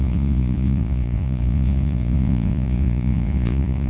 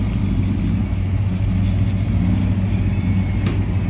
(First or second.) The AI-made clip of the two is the first